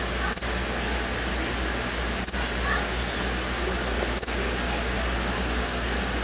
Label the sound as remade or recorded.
recorded